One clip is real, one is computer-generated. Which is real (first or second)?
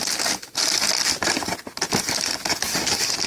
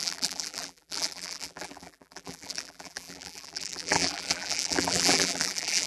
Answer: first